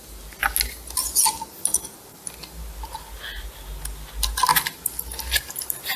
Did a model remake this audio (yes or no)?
no